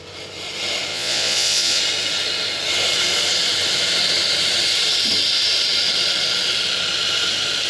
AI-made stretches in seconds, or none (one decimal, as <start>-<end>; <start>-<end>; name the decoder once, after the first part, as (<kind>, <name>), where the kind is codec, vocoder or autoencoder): 0.9-1.8 (vocoder, Vocos)